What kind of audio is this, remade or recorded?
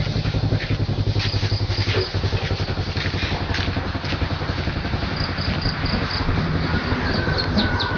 recorded